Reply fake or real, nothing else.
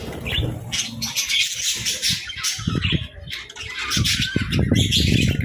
real